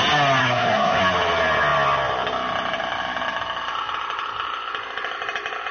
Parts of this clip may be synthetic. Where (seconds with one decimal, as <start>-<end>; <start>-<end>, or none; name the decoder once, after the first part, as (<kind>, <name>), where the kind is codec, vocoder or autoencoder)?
0.4-1.0 (codec, SNAC)